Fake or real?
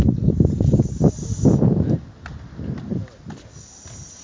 real